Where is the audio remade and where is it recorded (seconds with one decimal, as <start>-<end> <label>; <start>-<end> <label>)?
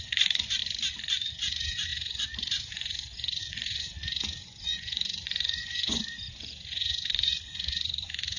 0.0-0.6 remade; 0.6-1.3 recorded; 1.3-8.4 remade